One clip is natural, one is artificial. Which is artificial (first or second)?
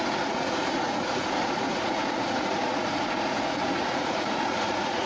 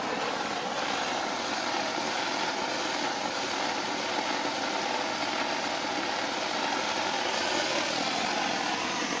first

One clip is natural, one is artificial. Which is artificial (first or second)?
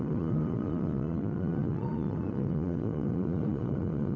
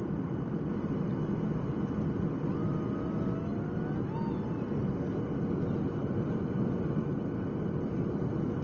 first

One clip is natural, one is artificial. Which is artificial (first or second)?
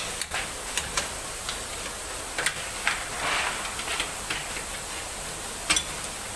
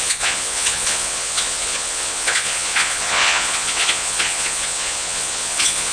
second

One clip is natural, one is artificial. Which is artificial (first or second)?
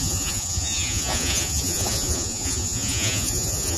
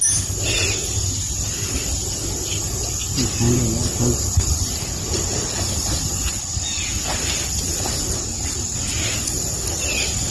first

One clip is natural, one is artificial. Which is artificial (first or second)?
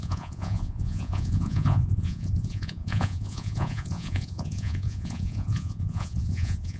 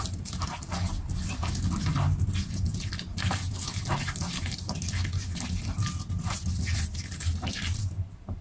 first